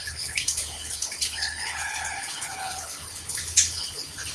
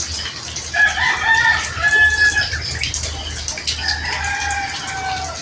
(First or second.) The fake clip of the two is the first